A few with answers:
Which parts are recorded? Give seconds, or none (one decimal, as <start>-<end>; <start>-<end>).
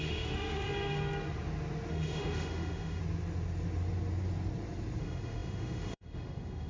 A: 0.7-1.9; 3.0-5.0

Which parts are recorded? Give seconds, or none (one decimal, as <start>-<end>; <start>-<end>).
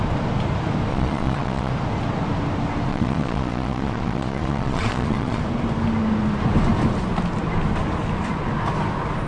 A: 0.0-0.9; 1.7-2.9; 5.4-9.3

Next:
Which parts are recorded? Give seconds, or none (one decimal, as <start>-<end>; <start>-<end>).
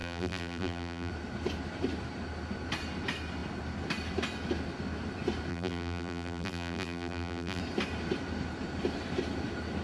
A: 1.1-5.5; 7.6-9.8